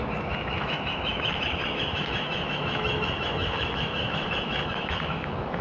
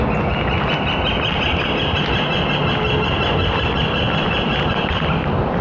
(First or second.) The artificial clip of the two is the first